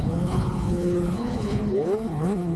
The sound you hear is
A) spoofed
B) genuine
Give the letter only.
A